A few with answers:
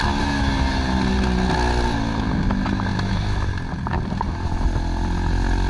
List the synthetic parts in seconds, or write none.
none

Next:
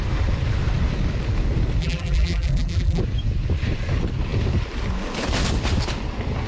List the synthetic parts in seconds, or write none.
1.8-3.0 (vocoder, BigVGAN v2)

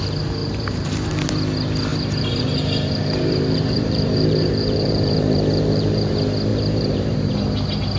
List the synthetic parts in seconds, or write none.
0.4-1.1 (vocoder, BigVGAN v2); 1.9-6.1; 6.5-7.3

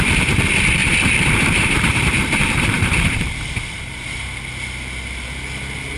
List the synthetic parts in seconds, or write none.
0.8-4.4 (vocoder, BigVGAN v2)

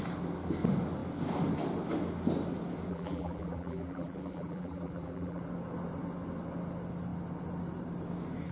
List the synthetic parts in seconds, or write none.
2.9-5.4 (vocoder, BigVGAN v2)